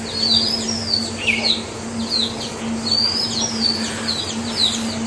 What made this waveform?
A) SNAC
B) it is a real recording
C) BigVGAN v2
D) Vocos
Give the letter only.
B